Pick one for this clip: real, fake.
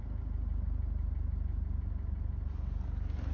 real